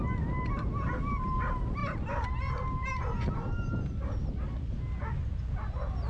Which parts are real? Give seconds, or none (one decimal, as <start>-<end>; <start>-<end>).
0.0-6.1